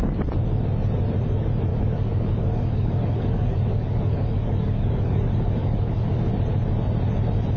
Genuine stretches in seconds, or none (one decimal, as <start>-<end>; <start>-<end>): 0.0-1.7; 6.3-7.6